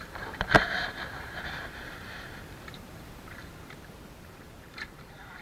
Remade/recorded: remade